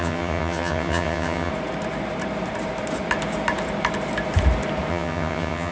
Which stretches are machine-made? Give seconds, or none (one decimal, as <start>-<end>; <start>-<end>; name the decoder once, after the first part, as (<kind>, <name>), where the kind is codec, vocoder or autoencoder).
0.0-1.5 (vocoder, HiFi-GAN); 4.9-5.7